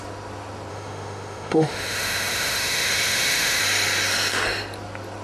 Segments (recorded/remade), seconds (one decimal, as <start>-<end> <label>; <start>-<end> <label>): 0.0-0.7 recorded; 0.7-3.6 remade; 3.6-5.2 recorded